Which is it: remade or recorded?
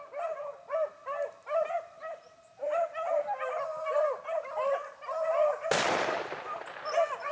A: recorded